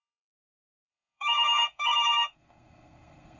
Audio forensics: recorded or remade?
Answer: remade